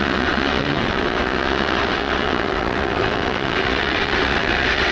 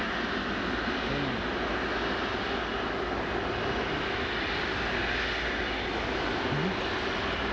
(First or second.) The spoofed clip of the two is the first